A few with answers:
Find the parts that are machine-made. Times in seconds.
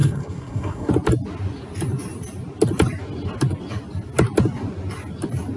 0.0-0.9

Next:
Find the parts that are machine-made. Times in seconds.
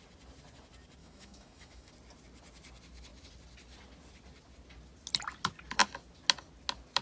1.0-1.9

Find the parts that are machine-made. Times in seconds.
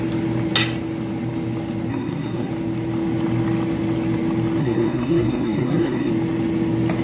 1.9-2.5; 4.6-6.1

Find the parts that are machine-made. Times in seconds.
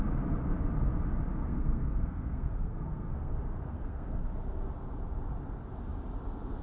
1.4-3.3; 3.7-4.3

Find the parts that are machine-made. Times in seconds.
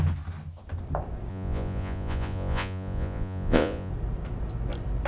1.3-3.9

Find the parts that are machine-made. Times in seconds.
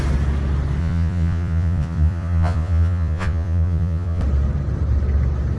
0.8-4.2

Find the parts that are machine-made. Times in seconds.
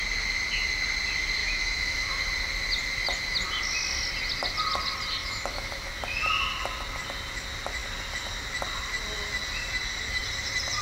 1.4-2.2; 5.2-5.9